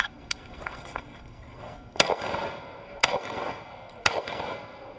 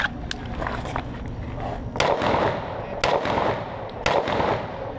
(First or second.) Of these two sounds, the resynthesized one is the first